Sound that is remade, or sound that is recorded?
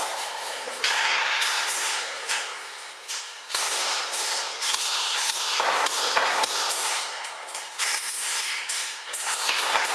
remade